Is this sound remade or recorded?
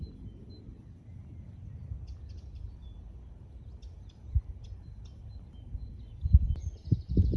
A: recorded